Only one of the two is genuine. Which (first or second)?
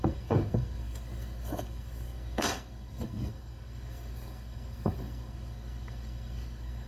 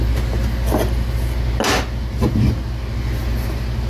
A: second